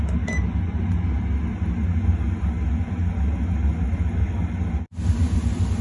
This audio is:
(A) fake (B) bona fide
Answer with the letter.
B